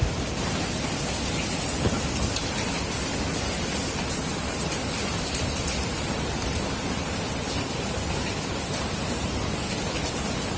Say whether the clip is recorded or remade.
recorded